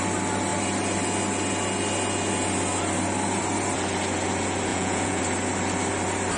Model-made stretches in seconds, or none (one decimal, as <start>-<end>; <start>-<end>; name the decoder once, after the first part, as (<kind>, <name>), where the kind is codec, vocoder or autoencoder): 4.7-5.2 (vocoder, Vocos)